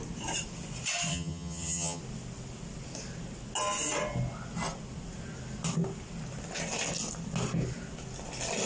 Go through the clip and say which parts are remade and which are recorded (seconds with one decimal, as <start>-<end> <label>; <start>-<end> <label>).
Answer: 0.0-1.1 recorded; 1.1-2.0 remade; 2.0-8.7 recorded